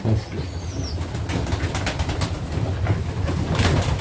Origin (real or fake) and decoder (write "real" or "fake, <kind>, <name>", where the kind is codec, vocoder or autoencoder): real